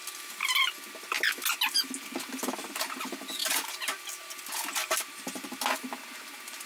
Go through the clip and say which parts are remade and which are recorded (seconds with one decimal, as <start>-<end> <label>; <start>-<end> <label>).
0.0-6.7 recorded